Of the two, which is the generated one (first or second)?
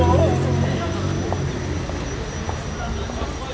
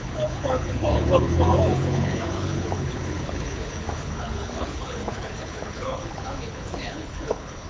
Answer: second